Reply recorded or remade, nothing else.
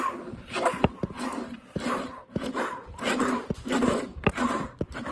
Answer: remade